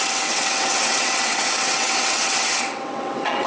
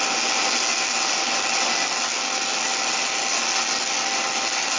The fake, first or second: first